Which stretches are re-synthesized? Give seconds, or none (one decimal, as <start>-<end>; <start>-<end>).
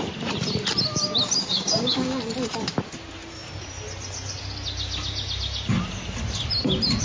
1.5-2.2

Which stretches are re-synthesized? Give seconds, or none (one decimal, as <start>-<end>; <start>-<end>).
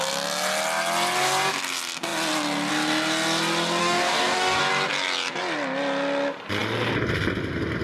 3.8-4.6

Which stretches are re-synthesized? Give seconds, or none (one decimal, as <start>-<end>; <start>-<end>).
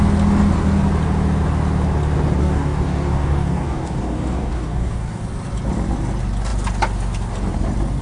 2.4-5.2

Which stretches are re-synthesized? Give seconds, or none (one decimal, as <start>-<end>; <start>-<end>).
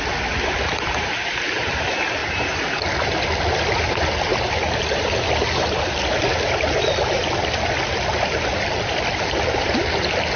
none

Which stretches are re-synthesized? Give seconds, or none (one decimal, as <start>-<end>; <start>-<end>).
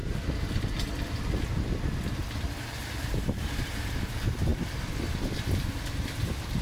none